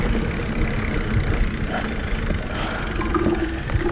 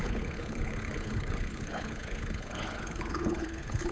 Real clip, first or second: first